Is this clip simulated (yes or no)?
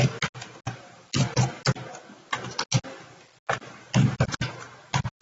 no